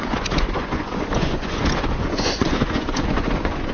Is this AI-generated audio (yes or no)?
yes